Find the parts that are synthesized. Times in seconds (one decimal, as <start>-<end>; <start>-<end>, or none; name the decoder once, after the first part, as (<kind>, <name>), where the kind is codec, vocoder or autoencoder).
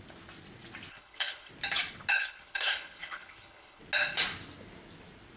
0.9-1.5 (codec, HILCodec); 2.1-3.8